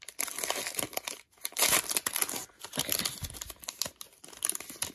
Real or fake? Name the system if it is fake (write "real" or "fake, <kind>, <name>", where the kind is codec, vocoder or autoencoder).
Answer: real